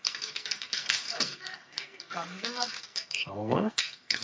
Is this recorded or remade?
remade